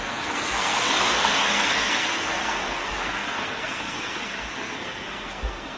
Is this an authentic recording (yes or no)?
no